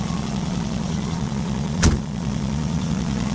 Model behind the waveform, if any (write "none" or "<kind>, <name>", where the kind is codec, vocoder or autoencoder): vocoder, Vocos